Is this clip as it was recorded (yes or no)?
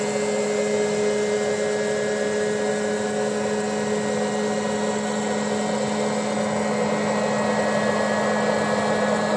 yes